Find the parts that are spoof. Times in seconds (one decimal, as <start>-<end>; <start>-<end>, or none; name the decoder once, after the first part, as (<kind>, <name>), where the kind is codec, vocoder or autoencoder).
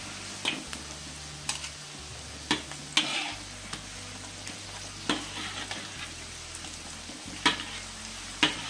none